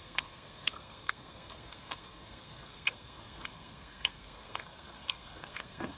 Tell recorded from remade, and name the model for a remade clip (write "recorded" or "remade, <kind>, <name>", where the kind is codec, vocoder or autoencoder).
remade, codec, SNAC